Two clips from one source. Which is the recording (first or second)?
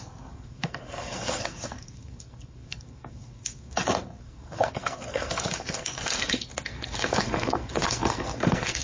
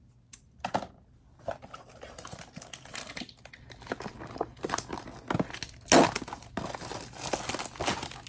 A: second